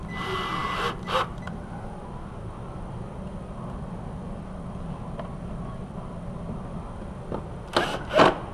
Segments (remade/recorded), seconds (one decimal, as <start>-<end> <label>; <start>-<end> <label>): 0.0-8.5 recorded